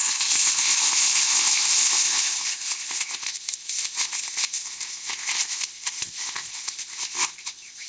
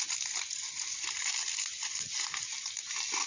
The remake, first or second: first